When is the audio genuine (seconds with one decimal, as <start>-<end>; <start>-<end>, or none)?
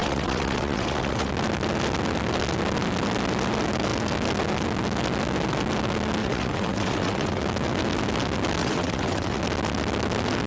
1.3-6.2; 7.4-8.6; 9.4-10.5